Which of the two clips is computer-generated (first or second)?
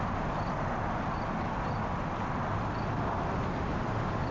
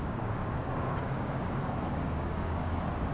second